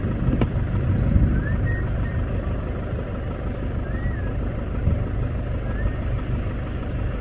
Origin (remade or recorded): remade